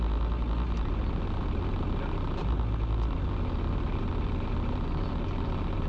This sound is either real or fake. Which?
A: real